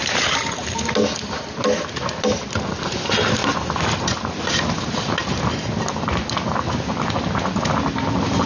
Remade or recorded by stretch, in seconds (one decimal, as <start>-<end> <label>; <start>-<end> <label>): 0.0-8.5 recorded